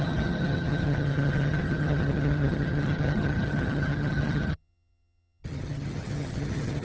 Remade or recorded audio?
remade